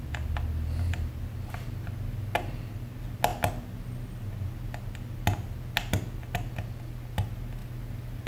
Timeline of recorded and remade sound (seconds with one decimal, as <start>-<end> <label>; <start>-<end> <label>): 0.0-8.3 recorded